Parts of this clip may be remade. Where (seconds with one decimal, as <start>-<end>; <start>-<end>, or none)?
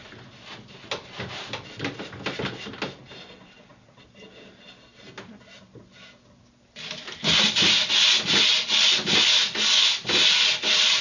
none